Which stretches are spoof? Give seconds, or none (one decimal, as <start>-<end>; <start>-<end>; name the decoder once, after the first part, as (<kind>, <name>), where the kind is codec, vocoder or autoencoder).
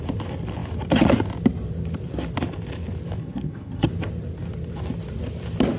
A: 3.2-3.9 (vocoder, HiFi-GAN)